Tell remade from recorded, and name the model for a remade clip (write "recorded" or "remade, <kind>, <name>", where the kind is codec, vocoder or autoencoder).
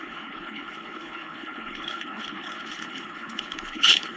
remade, codec, HILCodec